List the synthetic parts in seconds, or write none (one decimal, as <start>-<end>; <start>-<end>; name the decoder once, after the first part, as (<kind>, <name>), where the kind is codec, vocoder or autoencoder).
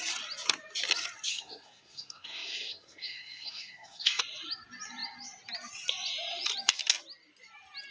1.3-4.2 (codec, SNAC)